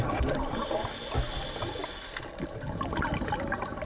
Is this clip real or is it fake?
real